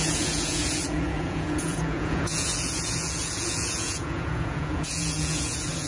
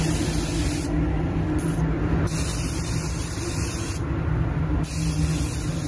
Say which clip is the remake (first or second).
first